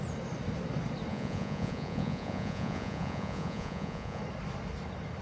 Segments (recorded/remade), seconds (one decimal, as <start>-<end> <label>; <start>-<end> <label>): 0.0-1.1 recorded; 1.1-4.2 remade; 4.2-5.2 recorded